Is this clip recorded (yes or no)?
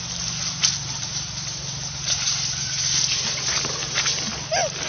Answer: yes